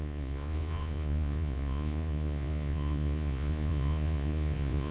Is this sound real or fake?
fake